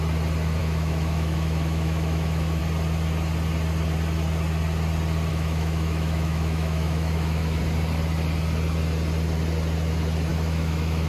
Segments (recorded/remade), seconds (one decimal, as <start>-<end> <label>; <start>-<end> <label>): 0.0-0.6 recorded; 0.6-2.6 remade; 2.6-5.3 recorded; 5.3-7.6 remade; 7.6-10.3 recorded; 10.3-11.1 remade